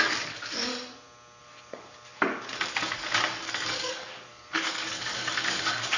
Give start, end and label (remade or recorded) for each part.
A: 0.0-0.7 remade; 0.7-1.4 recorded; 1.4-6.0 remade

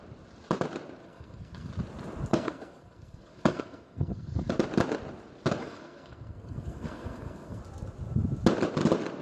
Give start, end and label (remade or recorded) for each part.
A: 0.0-1.0 recorded; 1.0-1.7 remade; 1.7-2.3 recorded; 2.3-4.5 remade; 4.5-5.6 recorded; 5.6-7.6 remade; 7.6-9.2 recorded

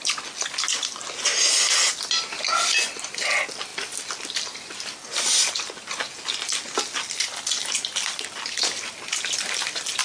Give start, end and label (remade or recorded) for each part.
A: 0.0-10.0 recorded

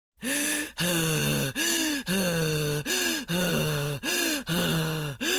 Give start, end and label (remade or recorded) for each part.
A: 0.0-1.2 recorded; 1.2-2.9 remade; 2.9-3.5 recorded; 3.5-4.1 remade; 4.1-5.4 recorded